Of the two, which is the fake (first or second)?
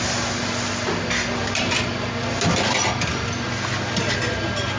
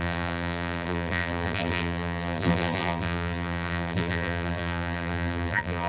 second